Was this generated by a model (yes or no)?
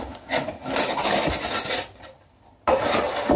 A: no